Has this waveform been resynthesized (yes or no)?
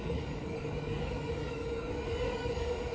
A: yes